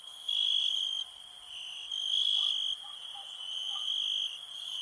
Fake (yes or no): no